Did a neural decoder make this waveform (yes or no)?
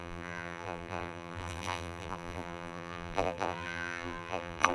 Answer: yes